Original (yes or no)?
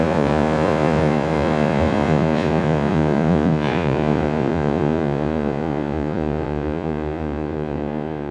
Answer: no